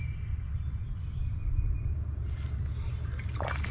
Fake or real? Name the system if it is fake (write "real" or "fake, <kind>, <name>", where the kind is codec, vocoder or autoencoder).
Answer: real